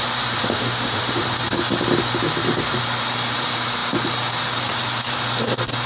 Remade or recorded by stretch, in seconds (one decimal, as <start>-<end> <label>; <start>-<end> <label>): 0.0-0.4 recorded; 0.4-1.2 remade; 1.2-5.9 recorded